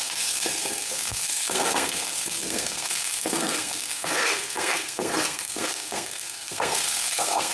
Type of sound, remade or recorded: remade